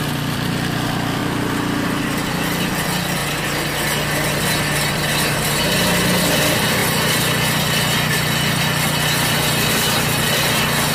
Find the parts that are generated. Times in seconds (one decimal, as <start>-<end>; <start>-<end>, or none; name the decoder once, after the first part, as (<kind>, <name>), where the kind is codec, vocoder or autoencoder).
0.0-1.2 (vocoder, BigVGAN v2); 2.0-10.9